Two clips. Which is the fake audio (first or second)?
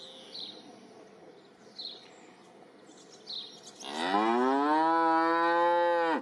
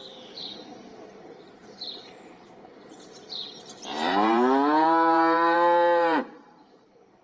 second